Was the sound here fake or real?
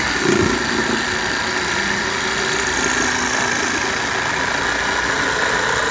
real